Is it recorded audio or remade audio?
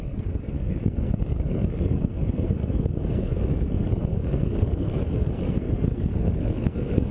remade